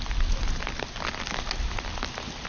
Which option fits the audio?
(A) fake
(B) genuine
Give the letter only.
B